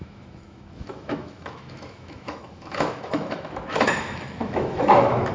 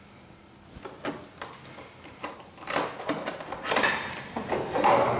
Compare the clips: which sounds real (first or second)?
second